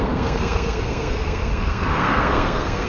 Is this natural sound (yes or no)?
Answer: no